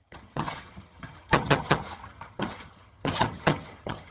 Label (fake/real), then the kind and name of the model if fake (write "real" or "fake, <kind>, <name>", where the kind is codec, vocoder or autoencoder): fake, vocoder, HiFi-GAN